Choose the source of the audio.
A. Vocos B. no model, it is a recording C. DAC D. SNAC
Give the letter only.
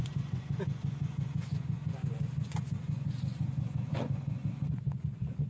A